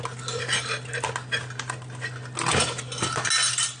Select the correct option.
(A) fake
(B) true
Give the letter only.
B